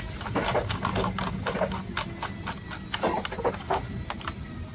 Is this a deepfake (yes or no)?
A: no